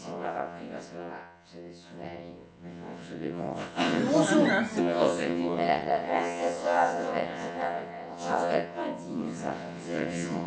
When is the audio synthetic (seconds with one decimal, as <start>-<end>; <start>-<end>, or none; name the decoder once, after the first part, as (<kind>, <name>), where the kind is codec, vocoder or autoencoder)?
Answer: 0.0-4.0 (vocoder, WaveNeXt); 4.8-10.5